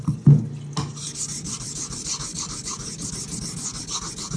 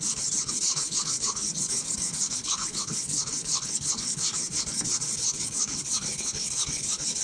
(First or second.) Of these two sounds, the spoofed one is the second